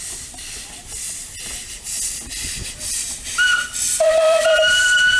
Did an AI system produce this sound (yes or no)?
yes